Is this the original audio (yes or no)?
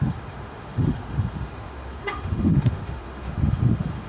no